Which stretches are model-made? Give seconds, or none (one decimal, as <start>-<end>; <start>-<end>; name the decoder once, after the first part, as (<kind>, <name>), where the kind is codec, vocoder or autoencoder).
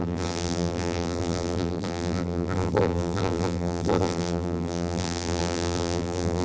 0.0-6.4 (vocoder, BigVGAN v2)